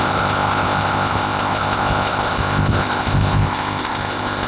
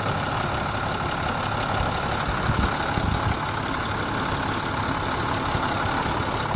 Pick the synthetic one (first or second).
first